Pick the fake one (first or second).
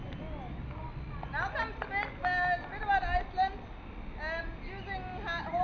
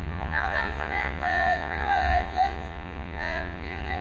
second